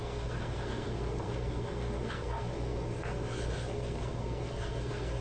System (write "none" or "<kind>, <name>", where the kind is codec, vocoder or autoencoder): codec, SNAC